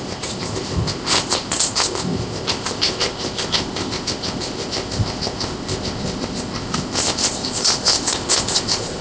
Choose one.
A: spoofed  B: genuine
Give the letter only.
A